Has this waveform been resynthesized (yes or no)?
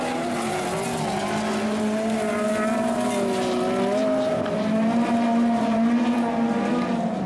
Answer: no